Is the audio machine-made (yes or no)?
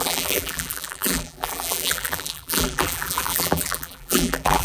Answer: yes